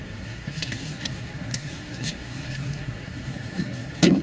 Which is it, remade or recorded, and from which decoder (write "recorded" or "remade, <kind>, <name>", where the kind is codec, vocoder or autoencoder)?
remade, codec, SNAC